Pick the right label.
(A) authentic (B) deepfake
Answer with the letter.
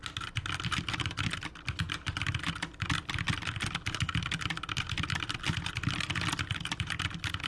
A